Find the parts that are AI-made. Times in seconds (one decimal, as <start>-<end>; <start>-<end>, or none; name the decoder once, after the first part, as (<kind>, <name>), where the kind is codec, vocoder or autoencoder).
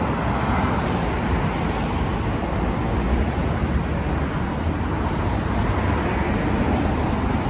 none